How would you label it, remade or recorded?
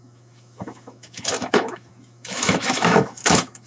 remade